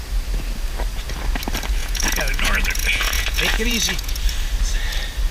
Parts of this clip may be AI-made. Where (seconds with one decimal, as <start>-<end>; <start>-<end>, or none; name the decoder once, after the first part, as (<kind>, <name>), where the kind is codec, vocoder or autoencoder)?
1.8-4.2 (vocoder, Vocos)